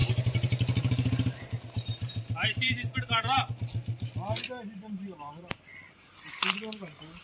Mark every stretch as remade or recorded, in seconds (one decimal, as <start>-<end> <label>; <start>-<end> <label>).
0.0-3.5 remade; 3.5-7.2 recorded